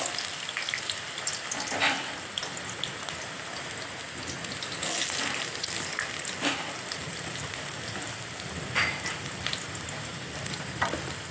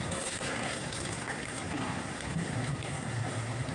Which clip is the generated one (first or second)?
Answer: second